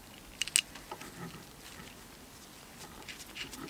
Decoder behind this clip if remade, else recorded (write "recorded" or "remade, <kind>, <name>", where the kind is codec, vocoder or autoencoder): recorded